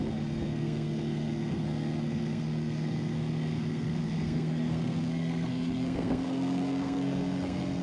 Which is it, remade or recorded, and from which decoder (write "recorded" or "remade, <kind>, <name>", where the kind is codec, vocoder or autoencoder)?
remade, codec, SNAC